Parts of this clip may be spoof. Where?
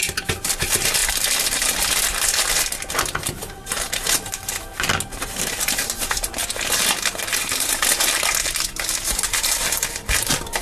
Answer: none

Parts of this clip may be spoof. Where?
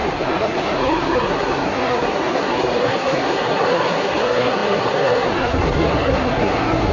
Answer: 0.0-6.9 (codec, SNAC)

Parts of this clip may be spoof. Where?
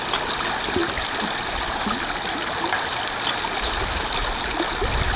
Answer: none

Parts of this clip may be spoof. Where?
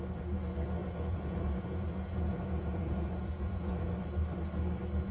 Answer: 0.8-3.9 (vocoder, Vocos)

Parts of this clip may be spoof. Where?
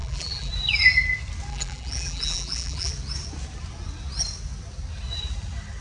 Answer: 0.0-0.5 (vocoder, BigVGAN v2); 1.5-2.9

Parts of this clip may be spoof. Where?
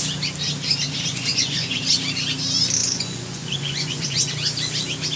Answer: 1.1-1.8 (vocoder, Vocos); 2.8-4.3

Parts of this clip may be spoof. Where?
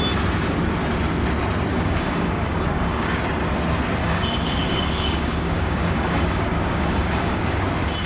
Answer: 1.7-3.2 (codec, DAC); 4.0-7.4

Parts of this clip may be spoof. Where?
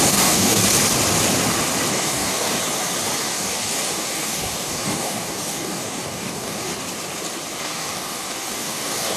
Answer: 0.0-0.6 (codec, DAC); 1.9-2.6; 3.2-6.7; 7.6-9.2